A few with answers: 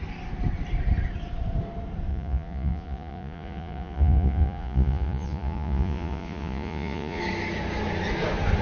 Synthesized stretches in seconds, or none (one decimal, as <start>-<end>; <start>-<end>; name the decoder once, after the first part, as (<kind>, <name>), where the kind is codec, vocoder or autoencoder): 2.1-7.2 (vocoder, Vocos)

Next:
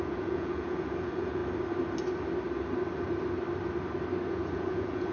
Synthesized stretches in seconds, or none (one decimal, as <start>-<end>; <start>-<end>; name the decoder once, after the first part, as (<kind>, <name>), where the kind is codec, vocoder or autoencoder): 0.0-1.4 (vocoder, Vocos); 4.3-5.1

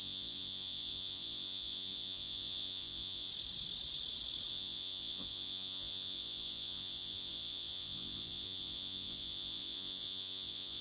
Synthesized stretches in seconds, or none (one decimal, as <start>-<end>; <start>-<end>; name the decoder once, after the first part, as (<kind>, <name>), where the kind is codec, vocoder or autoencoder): 0.0-3.3 (vocoder, Vocos); 4.5-10.8

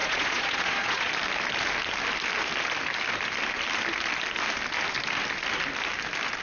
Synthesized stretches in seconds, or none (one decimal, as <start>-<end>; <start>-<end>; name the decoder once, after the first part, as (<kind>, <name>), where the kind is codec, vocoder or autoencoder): 0.0-1.1 (vocoder, Vocos)

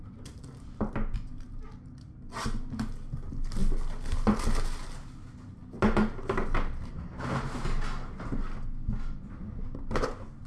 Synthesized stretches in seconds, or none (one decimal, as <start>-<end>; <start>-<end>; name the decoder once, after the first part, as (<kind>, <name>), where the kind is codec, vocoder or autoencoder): none

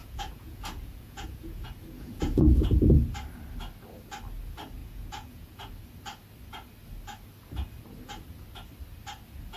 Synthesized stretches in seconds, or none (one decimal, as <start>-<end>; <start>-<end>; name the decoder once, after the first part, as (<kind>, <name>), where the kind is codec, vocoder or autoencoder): 0.0-2.8 (vocoder, Vocos); 4.8-5.7

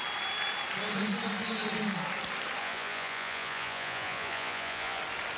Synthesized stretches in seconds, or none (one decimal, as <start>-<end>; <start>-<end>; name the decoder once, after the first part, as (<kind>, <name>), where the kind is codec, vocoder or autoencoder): 2.6-5.0 (vocoder, Vocos)